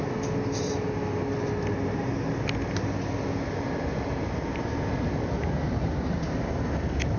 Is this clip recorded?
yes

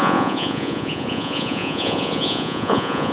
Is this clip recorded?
no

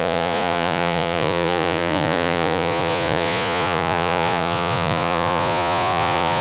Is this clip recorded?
no